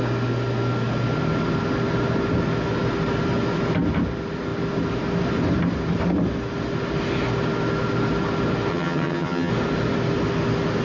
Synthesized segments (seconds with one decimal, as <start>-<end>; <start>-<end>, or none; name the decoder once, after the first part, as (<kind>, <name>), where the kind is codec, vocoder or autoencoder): 8.7-9.5 (vocoder, HiFi-GAN)